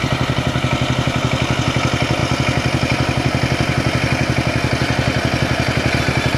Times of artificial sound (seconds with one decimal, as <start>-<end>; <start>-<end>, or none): none